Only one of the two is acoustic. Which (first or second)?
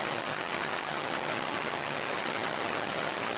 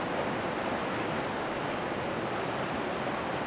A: second